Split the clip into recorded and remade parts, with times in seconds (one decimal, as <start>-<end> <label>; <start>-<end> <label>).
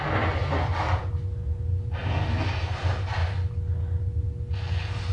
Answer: 0.0-5.1 recorded